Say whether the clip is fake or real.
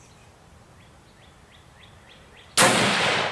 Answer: real